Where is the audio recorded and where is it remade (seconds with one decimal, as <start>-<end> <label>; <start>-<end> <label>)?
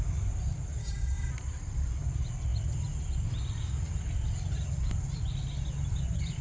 0.0-0.8 recorded; 0.8-1.3 remade; 1.3-6.4 recorded